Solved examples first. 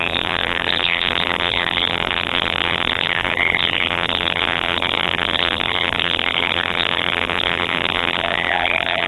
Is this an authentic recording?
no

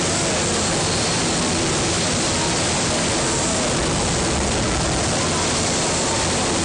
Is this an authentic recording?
yes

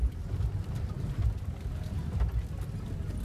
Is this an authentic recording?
yes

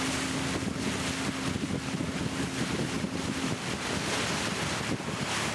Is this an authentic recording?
yes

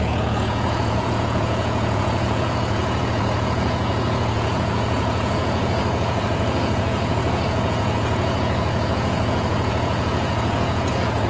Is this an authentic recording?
no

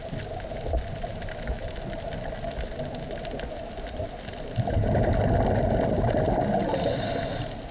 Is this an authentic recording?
yes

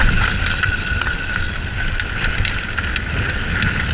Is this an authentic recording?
yes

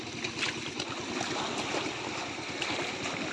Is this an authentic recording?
yes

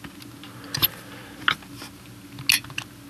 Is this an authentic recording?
yes